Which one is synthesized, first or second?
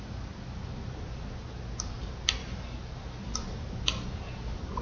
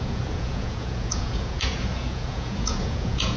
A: second